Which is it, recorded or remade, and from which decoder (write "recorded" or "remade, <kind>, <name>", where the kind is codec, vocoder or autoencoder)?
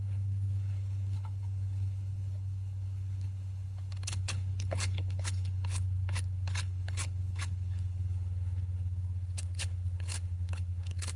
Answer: remade, codec, HILCodec